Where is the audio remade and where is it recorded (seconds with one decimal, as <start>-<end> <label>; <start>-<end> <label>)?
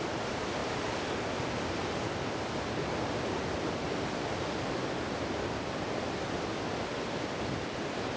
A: 0.0-8.2 recorded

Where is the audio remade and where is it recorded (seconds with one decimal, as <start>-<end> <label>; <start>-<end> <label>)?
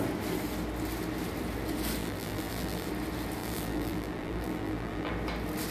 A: 0.0-2.0 recorded; 2.0-2.9 remade; 2.9-3.4 recorded; 3.4-5.1 remade; 5.1-5.7 recorded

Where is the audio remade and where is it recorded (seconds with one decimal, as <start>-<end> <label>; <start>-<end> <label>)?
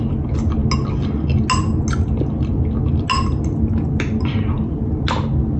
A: 0.0-5.6 recorded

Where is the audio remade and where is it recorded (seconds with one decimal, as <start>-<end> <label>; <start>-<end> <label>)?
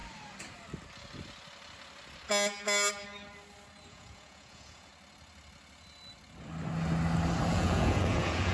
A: 0.0-3.9 recorded; 3.9-4.9 remade; 4.9-7.5 recorded; 7.5-8.5 remade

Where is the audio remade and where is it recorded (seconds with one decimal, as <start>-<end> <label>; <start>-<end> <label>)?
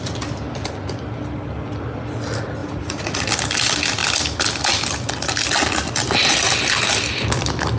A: 0.0-2.6 recorded; 2.6-3.3 remade; 3.3-7.8 recorded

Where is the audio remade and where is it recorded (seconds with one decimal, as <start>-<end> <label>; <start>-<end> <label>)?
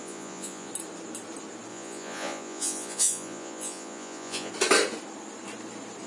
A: 0.0-0.7 remade; 0.7-1.7 recorded; 1.7-4.5 remade; 4.5-6.1 recorded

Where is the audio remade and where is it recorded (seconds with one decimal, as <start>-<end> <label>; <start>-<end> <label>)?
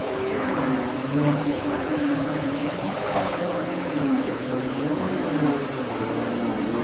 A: 0.0-0.6 remade; 0.6-1.0 recorded; 1.0-5.1 remade; 5.1-6.8 recorded